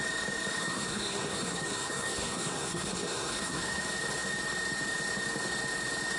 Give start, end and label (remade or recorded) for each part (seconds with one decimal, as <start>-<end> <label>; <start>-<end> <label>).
0.0-0.6 recorded; 0.6-3.8 remade; 3.8-6.2 recorded